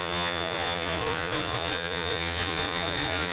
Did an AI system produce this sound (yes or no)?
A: yes